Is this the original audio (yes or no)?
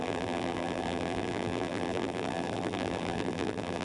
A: no